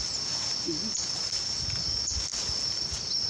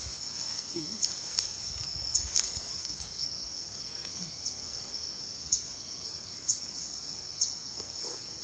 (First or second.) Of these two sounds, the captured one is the first